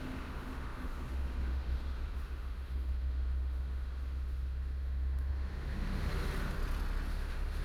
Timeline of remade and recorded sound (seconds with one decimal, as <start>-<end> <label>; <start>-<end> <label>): 0.0-6.1 remade; 6.1-7.1 recorded; 7.1-7.6 remade

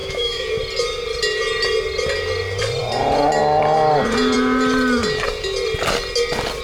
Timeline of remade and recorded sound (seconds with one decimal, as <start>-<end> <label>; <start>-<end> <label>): 0.0-0.6 remade; 0.6-6.6 recorded

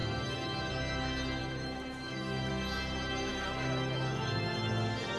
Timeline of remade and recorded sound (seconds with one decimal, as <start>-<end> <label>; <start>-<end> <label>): 0.0-0.7 remade; 0.7-1.4 recorded; 1.4-2.5 remade; 2.5-3.3 recorded; 3.3-4.7 remade; 4.7-5.2 recorded

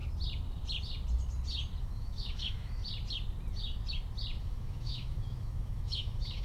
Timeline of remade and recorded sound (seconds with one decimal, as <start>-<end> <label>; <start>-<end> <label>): 0.0-1.8 recorded; 1.8-2.8 remade; 2.8-4.4 recorded; 4.4-6.4 remade

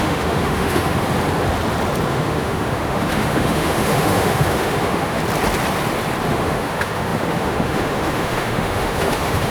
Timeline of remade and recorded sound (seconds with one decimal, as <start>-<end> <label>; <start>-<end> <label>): 0.0-1.0 remade; 1.0-2.1 recorded; 2.1-5.2 remade; 5.2-6.3 recorded; 6.3-9.5 remade

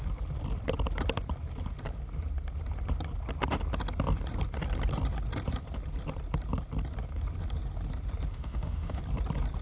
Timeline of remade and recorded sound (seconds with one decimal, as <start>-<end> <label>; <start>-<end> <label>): 0.0-8.3 recorded; 8.3-9.0 remade; 9.0-9.6 recorded